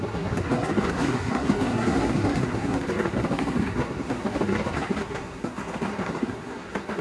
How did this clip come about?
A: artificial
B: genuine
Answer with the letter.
A